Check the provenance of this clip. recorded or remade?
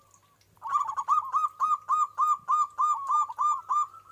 recorded